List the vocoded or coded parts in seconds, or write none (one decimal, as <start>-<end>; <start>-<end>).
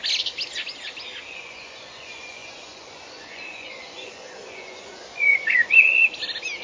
1.3-5.9